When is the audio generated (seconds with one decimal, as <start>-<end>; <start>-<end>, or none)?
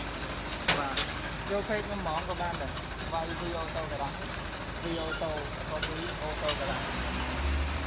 1.0-1.8